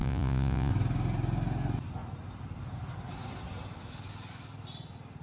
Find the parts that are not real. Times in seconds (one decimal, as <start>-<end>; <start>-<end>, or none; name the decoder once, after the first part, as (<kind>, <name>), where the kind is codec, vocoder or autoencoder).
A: 0.0-0.7 (vocoder, Vocos)